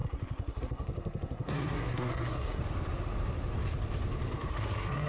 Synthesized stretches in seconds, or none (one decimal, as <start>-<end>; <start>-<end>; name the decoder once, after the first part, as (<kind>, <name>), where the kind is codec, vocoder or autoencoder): 0.0-2.6 (codec, SNAC); 4.5-5.1